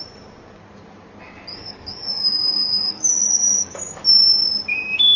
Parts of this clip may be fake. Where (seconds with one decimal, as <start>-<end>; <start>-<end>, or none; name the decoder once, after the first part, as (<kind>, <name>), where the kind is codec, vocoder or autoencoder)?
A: 1.5-4.0 (codec, DAC)